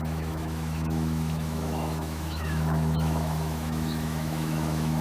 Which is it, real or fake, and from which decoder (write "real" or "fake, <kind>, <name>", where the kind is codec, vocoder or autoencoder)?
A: fake, autoencoder, DAC-VAE